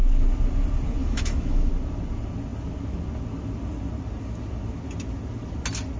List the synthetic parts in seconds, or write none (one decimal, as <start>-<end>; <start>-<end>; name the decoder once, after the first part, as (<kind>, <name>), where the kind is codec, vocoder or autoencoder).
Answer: 1.0-1.7 (autoencoder, DAC-VAE)